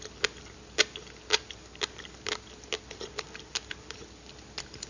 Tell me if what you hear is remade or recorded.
recorded